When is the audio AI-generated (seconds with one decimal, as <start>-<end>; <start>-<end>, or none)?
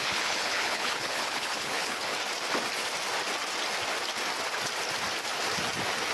0.0-2.1